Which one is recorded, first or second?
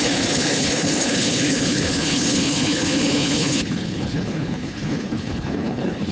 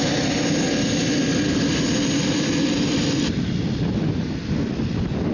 second